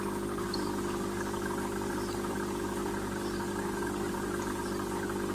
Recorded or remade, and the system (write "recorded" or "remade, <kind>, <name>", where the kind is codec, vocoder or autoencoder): recorded